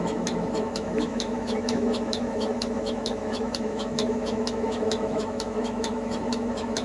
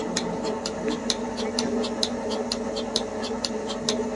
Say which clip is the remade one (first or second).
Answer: first